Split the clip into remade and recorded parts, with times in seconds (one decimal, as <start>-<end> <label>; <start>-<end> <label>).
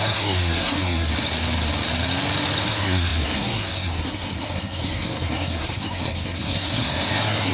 0.0-1.1 remade; 1.1-2.7 recorded; 2.7-7.5 remade